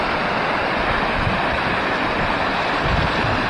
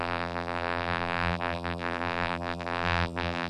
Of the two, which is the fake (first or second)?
second